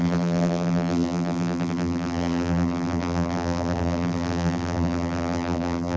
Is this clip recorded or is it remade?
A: remade